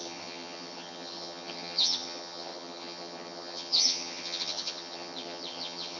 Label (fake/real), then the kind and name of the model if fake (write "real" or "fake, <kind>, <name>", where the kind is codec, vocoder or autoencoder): fake, vocoder, HiFi-GAN